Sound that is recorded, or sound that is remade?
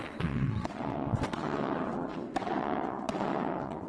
remade